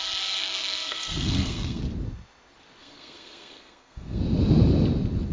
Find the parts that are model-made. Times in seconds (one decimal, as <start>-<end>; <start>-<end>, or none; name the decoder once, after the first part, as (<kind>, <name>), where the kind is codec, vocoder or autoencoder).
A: 0.4-1.8 (codec, SNAC); 2.8-4.2